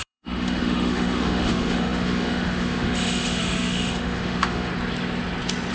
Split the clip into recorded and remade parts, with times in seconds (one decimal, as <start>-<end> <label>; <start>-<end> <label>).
0.0-4.7 remade; 4.7-5.7 recorded